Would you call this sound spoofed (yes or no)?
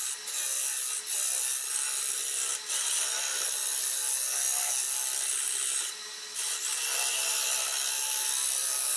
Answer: no